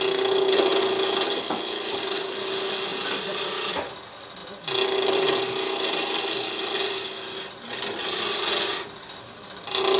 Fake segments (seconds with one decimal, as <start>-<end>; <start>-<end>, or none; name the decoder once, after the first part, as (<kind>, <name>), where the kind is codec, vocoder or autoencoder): none